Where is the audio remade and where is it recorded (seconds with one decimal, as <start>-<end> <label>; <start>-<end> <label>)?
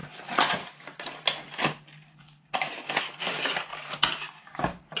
0.0-5.0 recorded